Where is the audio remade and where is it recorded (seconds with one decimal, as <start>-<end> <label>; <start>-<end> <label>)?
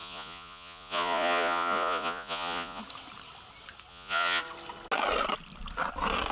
0.0-2.8 remade; 2.8-3.9 recorded; 3.9-4.4 remade; 4.4-6.3 recorded